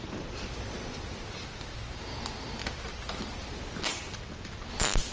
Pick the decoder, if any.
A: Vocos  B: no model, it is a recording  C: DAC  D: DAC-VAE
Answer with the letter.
B